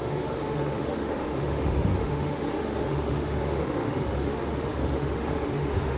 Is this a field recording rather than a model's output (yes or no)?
no